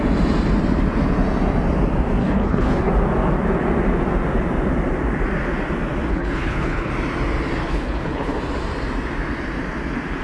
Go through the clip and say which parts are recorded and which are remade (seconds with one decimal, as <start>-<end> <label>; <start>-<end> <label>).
0.0-2.2 recorded; 2.2-2.9 remade; 2.9-6.1 recorded; 6.1-6.9 remade; 6.9-7.6 recorded; 7.6-8.4 remade; 8.4-10.2 recorded